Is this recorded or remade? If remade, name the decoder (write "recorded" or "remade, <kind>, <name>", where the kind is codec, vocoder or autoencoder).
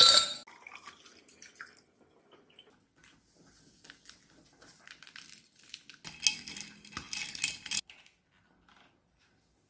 recorded